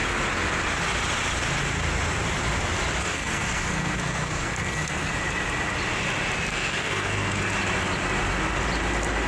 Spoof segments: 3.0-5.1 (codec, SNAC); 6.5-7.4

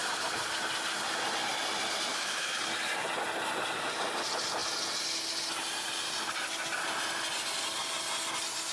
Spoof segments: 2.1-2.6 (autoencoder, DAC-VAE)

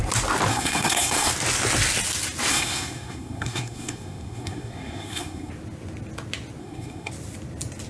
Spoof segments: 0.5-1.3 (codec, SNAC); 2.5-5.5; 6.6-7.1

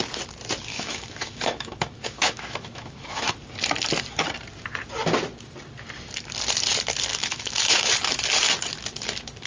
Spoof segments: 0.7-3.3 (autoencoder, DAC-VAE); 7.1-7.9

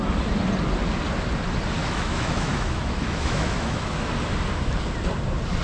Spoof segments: 1.8-4.1 (autoencoder, DAC-VAE)

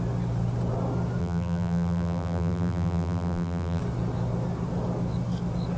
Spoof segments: 1.2-3.8 (vocoder, BigVGAN v2)

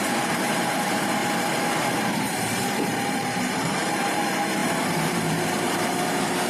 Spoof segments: 0.0-1.2 (vocoder, BigVGAN v2); 2.1-6.5